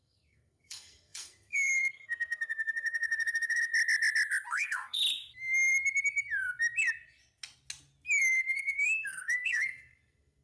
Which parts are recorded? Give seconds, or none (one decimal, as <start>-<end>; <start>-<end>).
3.7-4.5; 5.0-8.3